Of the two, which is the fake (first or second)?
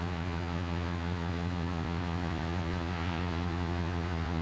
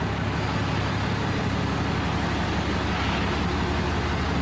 first